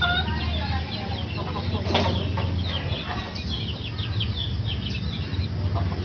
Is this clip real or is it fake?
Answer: real